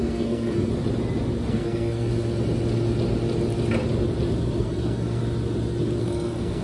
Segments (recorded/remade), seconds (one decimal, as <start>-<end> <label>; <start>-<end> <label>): 0.0-0.7 remade; 0.7-1.5 recorded; 1.5-2.1 remade; 2.1-4.6 recorded; 4.6-5.2 remade; 5.2-6.0 recorded; 6.0-6.6 remade